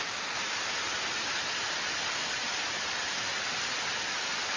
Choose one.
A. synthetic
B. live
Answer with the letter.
B